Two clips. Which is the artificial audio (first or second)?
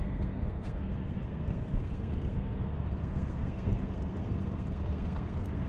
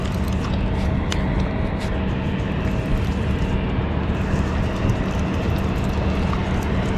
first